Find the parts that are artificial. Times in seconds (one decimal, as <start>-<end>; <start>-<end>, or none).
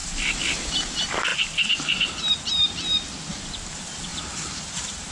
1.3-2.2; 4.1-5.1